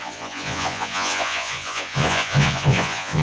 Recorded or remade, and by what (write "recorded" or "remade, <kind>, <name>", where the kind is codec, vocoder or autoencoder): remade, vocoder, Vocos